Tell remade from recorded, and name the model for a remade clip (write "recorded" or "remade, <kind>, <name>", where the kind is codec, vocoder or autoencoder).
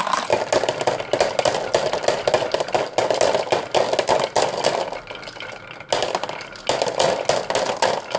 recorded